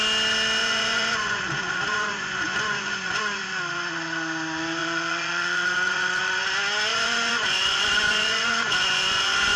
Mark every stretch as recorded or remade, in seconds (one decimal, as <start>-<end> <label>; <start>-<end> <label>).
0.0-0.6 recorded; 0.6-3.6 remade; 3.6-4.8 recorded; 4.8-6.5 remade; 6.5-6.9 recorded; 6.9-9.6 remade